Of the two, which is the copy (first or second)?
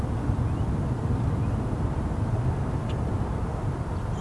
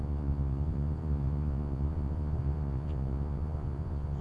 second